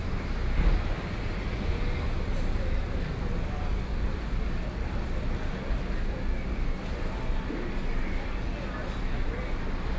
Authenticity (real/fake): real